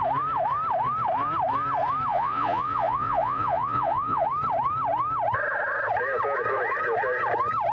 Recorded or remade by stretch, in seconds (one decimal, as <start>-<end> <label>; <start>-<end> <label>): 0.0-2.1 recorded; 2.1-4.3 remade; 4.3-7.7 recorded